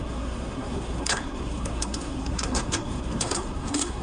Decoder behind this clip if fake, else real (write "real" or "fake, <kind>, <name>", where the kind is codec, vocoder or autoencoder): fake, codec, SNAC